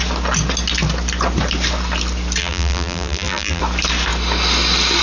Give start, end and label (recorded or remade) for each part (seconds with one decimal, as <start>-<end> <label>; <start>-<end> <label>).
0.0-2.4 recorded; 2.4-3.6 remade; 3.6-5.0 recorded